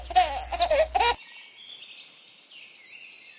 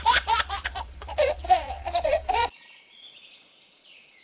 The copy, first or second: second